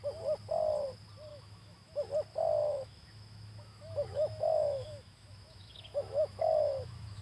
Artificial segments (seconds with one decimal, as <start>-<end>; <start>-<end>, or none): 1.3-2.1; 2.6-7.2